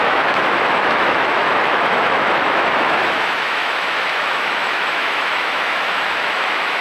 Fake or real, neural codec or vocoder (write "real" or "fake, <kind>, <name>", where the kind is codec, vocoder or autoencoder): fake, autoencoder, DAC-VAE